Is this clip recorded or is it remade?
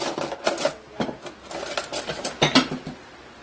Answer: recorded